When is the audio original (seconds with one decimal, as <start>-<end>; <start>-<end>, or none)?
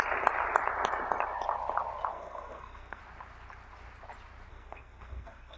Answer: 0.0-2.1; 3.0-4.5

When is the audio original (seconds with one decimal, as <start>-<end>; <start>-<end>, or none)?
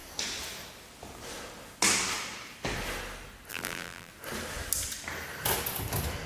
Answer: 0.0-3.5; 4.1-6.3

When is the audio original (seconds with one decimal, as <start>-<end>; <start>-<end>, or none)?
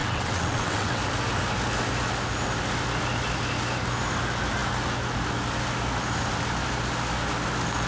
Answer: 1.0-7.9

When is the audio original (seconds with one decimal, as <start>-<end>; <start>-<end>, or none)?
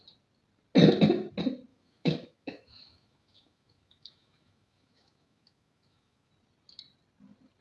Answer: 0.0-1.7; 6.3-7.6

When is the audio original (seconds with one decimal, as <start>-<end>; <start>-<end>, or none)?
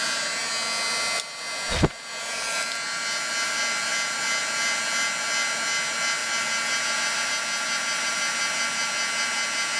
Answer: 0.0-9.8